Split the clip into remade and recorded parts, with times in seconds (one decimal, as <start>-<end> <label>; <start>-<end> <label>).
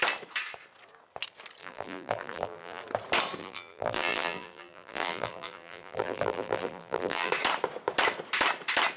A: 0.0-1.6 recorded; 1.6-2.8 remade; 2.8-3.4 recorded; 3.4-7.3 remade; 7.3-9.0 recorded